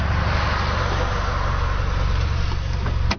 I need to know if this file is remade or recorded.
recorded